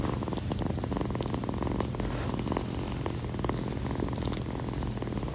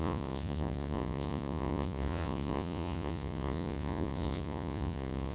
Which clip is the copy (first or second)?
second